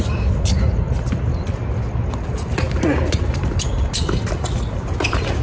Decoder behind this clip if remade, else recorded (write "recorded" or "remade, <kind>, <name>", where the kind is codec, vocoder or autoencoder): recorded